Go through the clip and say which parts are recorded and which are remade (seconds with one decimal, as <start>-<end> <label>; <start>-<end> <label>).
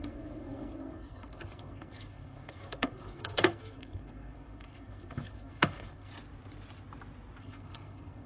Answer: 0.0-6.1 remade; 6.1-7.4 recorded; 7.4-8.3 remade